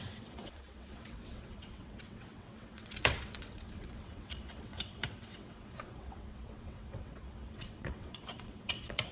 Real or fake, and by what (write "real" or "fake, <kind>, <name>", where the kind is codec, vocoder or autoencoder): fake, vocoder, WaveNeXt